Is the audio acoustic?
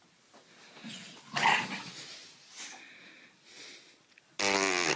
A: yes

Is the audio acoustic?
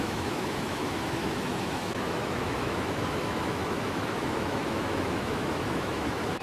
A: no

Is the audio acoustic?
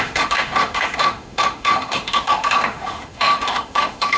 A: no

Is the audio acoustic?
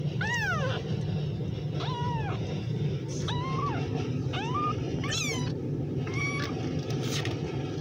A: yes